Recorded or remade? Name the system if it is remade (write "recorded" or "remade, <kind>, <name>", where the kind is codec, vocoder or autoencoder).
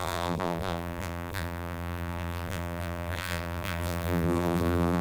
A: remade, vocoder, BigVGAN v2